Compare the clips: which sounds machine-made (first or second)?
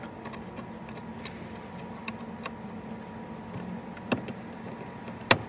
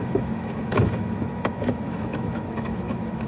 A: second